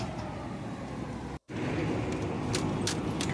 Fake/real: real